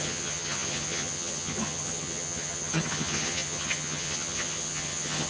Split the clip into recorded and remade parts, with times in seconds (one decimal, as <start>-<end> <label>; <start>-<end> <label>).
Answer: 0.0-5.3 remade